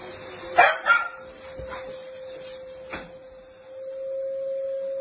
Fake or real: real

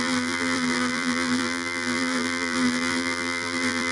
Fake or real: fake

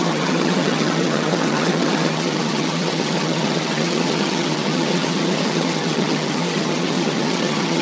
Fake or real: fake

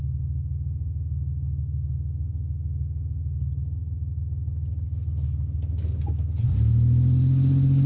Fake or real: real